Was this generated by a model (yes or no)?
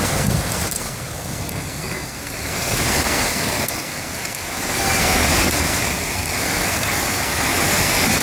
yes